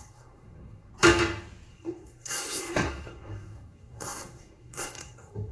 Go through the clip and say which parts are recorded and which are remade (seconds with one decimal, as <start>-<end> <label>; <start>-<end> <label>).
0.0-0.9 remade; 0.9-1.7 recorded; 1.7-5.5 remade